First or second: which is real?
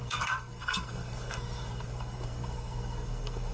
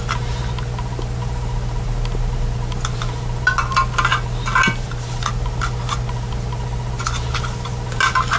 second